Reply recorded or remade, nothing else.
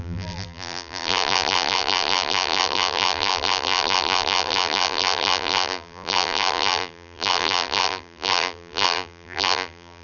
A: remade